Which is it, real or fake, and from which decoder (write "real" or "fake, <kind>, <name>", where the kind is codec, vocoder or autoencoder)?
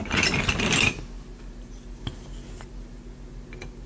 real